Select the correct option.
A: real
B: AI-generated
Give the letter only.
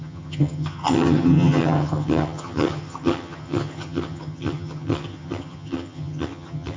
B